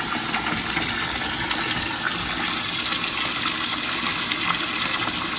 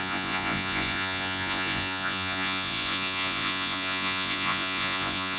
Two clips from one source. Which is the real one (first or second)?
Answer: first